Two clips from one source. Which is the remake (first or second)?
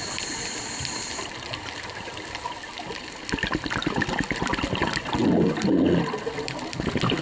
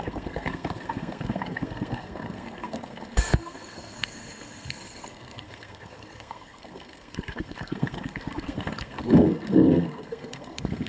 second